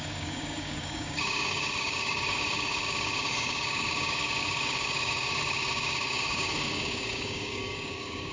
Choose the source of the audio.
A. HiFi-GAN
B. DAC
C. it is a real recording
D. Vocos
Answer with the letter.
B